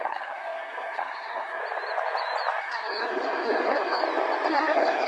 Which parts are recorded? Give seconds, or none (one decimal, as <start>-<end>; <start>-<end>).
1.6-2.6; 4.0-4.5